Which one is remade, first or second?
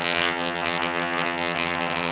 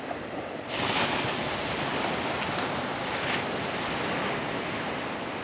first